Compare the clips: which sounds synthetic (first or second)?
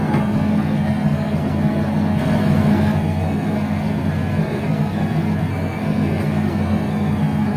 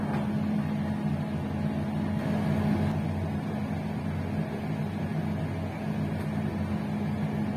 first